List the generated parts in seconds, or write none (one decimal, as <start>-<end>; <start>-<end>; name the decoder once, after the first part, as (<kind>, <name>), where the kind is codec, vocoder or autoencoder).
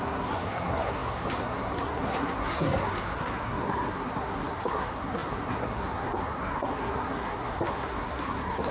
0.0-8.7 (codec, SNAC)